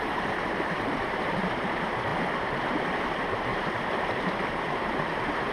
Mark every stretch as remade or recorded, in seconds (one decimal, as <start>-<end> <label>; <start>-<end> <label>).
0.0-2.1 remade; 2.1-2.6 recorded; 2.6-3.5 remade; 3.5-4.1 recorded; 4.1-5.5 remade